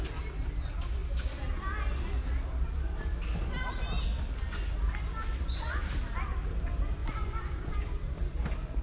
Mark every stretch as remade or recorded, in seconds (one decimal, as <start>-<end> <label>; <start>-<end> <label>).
0.0-7.0 recorded; 7.0-7.9 remade; 7.9-8.8 recorded